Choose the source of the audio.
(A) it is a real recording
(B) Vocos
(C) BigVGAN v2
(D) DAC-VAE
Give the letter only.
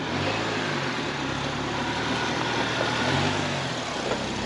A